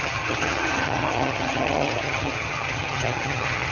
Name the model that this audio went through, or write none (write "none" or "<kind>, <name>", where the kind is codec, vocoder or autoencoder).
vocoder, HiFi-GAN